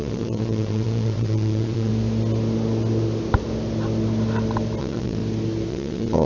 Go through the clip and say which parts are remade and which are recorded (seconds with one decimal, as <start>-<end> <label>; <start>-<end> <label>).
0.0-1.9 remade; 1.9-4.8 recorded; 4.8-5.2 remade; 5.2-5.7 recorded; 5.7-6.3 remade